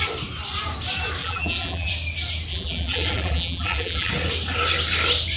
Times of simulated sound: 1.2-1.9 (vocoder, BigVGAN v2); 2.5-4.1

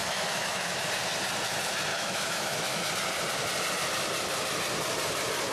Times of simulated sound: 0.0-0.9 (autoencoder, DAC-VAE); 1.9-2.9

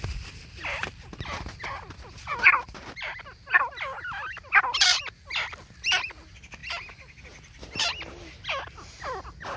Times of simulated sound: none

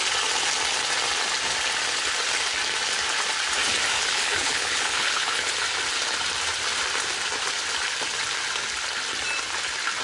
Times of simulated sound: 4.0-5.5 (codec, HILCodec)

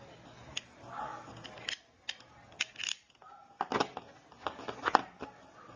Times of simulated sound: none

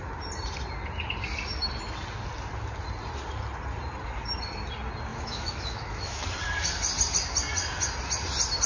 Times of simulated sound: 5.1-6.2 (autoencoder, DAC-VAE)